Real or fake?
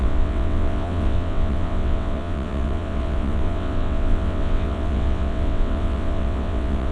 fake